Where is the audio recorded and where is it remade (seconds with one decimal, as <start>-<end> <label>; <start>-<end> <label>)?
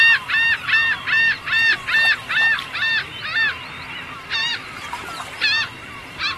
0.0-6.4 recorded